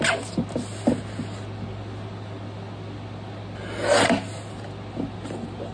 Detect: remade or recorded recorded